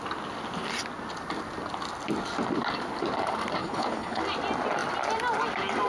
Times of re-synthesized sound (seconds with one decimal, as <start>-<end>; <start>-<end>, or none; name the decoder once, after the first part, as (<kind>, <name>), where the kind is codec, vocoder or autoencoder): 3.6-4.2 (codec, HILCodec)